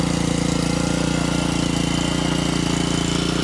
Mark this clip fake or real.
real